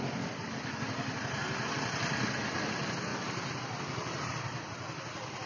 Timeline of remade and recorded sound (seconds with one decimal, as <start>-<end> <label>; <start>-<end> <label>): 0.0-3.1 recorded; 3.1-4.4 remade; 4.4-5.5 recorded